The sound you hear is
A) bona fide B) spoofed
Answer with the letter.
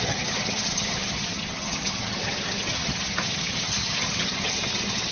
B